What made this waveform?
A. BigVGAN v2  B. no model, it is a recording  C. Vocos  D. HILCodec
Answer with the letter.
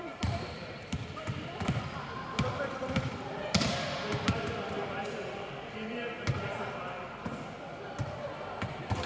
B